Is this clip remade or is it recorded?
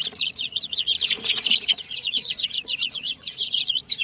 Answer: remade